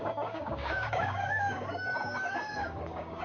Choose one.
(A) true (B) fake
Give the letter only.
B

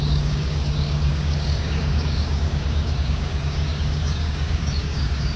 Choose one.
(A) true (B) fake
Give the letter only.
B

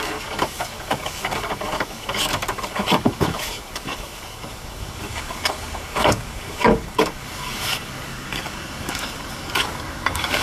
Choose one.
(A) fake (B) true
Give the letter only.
A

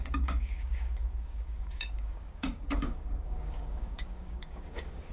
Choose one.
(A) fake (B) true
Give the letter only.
A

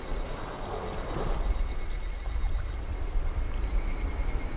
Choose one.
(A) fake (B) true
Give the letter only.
B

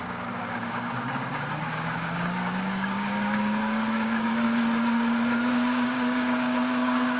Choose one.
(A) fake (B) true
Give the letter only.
A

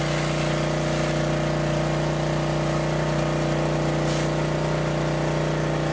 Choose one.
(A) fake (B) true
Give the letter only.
B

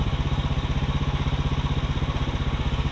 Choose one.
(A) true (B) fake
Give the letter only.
A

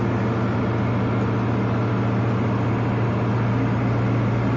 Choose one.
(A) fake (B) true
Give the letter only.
B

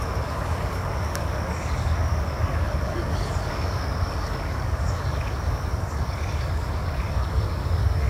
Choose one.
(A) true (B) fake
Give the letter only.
B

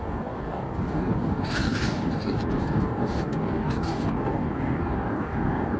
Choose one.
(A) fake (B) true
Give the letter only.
A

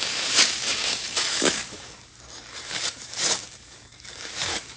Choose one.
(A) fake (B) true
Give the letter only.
A